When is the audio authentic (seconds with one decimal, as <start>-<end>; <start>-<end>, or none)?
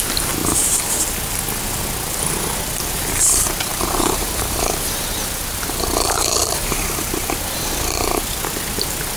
0.0-0.4; 0.9-3.7; 8.2-9.2